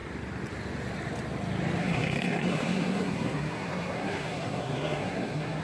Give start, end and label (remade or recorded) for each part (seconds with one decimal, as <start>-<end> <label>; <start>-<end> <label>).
0.0-1.8 recorded; 1.8-5.6 remade